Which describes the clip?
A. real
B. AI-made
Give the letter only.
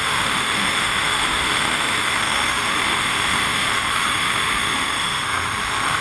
B